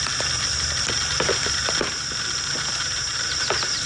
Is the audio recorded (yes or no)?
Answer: yes